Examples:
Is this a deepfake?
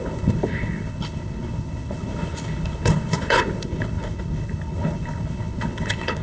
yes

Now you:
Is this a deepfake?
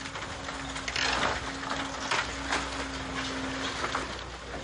no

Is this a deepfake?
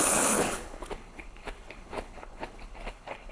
yes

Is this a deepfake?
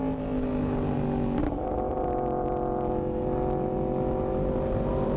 no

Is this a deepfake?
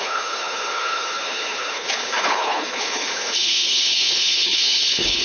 yes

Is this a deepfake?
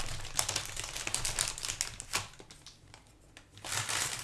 no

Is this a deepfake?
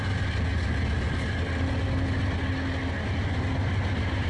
no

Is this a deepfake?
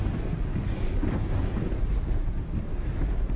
no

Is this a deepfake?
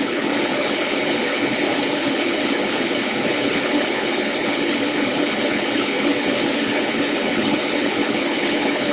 yes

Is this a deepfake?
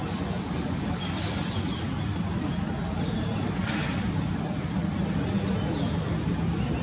no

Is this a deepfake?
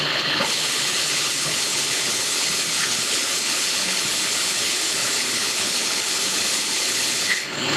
yes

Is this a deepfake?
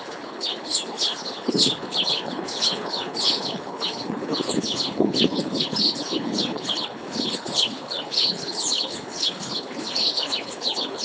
yes